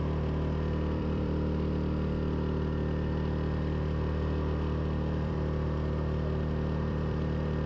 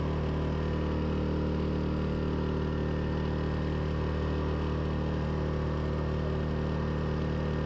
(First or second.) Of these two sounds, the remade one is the first